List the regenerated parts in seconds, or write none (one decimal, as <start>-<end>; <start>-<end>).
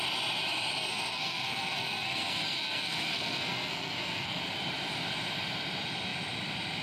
0.8-4.4